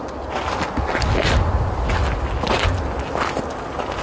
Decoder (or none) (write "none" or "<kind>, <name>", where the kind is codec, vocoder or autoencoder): none